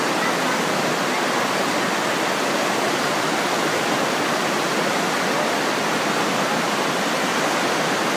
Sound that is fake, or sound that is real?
real